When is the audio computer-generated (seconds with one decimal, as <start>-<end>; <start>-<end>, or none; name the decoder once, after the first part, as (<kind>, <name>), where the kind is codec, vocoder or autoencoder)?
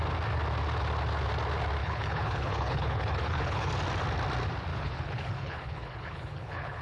1.8-3.7 (codec, HILCodec); 4.7-6.8